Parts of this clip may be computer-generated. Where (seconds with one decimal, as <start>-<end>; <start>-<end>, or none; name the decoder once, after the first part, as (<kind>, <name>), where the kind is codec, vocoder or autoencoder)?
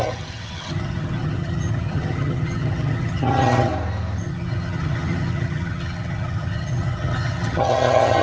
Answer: 0.0-3.7 (vocoder, HiFi-GAN); 4.2-8.2